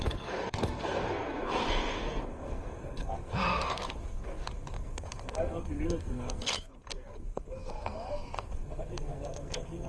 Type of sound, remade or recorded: remade